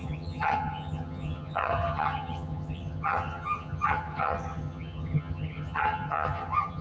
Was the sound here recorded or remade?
remade